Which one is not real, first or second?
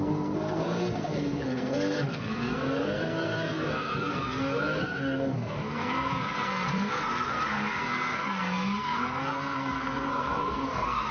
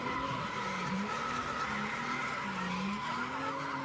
first